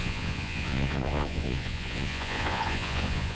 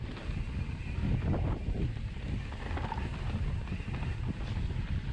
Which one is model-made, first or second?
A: first